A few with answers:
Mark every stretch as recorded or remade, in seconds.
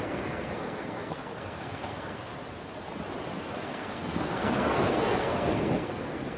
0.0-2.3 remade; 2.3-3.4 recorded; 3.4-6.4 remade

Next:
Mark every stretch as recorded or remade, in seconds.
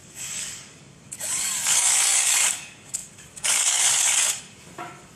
0.0-5.2 remade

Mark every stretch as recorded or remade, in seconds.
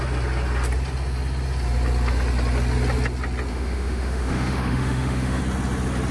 0.0-3.5 recorded; 3.5-5.4 remade; 5.4-6.1 recorded